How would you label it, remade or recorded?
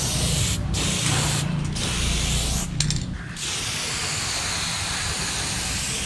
recorded